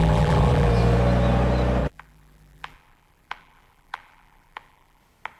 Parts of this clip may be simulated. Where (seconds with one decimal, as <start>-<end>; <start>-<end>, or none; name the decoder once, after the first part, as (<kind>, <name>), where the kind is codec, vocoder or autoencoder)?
0.0-0.7 (vocoder, BigVGAN v2); 1.8-5.0